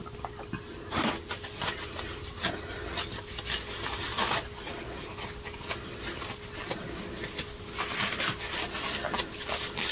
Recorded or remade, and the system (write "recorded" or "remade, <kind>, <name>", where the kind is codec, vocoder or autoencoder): recorded